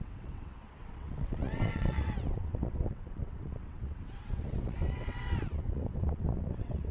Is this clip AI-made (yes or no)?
yes